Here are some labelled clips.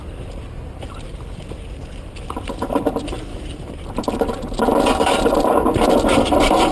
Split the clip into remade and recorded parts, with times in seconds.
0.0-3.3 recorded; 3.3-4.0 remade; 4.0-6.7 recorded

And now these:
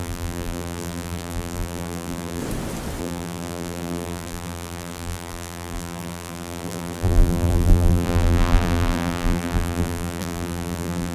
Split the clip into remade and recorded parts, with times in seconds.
0.0-2.4 remade; 2.4-3.0 recorded; 3.0-11.1 remade

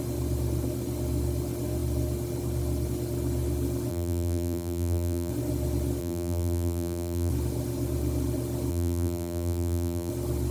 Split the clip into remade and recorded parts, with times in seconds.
0.0-3.9 recorded; 3.9-5.3 remade; 5.3-6.0 recorded; 6.0-7.3 remade; 7.3-8.7 recorded; 8.7-10.1 remade; 10.1-10.5 recorded

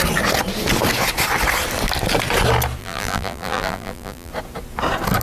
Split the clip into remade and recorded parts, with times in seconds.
0.0-2.8 recorded; 2.8-4.3 remade; 4.3-5.2 recorded

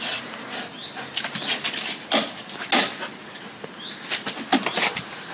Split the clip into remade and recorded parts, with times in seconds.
0.0-4.5 recorded; 4.5-5.3 remade

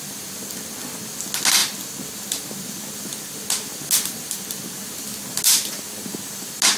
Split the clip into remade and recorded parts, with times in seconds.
0.0-6.8 recorded

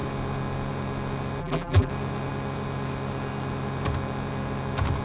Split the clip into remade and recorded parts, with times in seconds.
0.0-1.4 recorded; 1.4-1.9 remade; 1.9-5.0 recorded